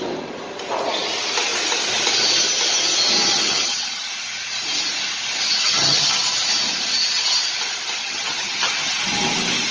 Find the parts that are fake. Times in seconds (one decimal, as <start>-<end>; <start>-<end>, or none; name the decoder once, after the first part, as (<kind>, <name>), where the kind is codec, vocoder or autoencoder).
3.3-4.1 (vocoder, HiFi-GAN); 5.6-6.2; 8.0-9.0